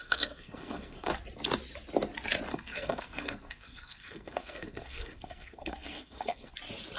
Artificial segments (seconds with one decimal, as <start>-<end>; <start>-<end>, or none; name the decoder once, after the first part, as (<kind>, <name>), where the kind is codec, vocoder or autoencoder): 0.0-1.1 (codec, SNAC); 2.5-6.5